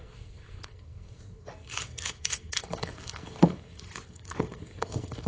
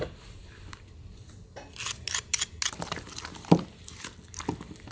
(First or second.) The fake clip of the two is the first